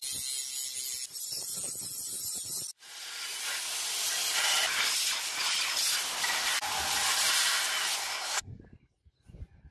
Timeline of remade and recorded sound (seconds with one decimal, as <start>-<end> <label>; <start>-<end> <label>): 0.0-8.0 recorded; 8.0-8.6 remade; 8.6-9.7 recorded